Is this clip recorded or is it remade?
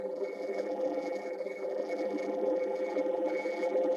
remade